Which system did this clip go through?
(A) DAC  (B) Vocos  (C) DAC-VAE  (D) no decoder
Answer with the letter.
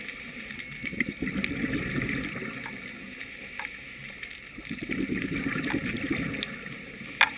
D